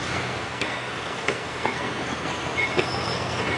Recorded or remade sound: remade